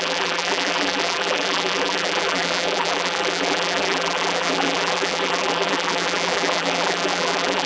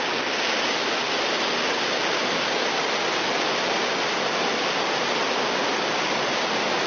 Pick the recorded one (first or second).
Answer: second